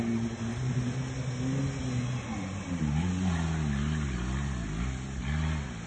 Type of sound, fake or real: real